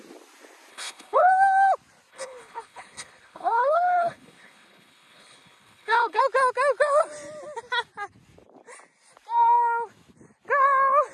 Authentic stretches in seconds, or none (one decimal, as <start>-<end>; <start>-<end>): 0.0-0.7; 1.3-2.1; 6.2-11.1

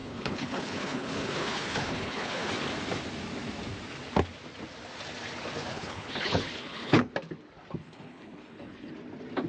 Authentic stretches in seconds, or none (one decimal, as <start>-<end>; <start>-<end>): 2.5-5.7; 7.1-7.8; 8.9-9.5